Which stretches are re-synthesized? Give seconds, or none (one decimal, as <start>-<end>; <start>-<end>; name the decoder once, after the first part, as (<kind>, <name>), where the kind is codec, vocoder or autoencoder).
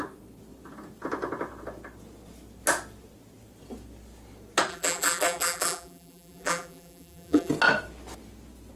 4.7-7.5 (vocoder, BigVGAN v2)